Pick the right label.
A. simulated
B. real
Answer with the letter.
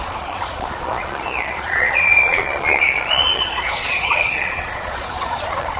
A